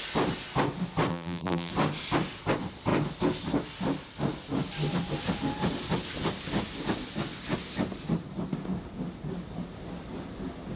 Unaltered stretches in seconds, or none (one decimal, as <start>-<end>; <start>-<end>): 0.0-1.1; 1.7-10.8